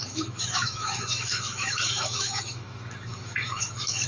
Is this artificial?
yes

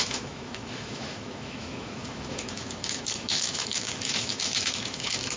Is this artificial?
yes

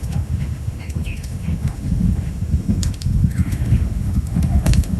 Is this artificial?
yes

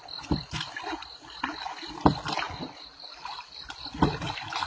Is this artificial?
no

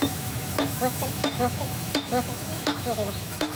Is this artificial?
yes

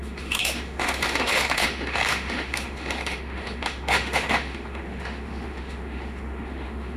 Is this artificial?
yes